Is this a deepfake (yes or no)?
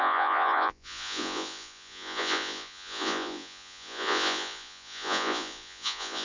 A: yes